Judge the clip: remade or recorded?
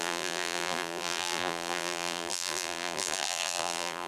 remade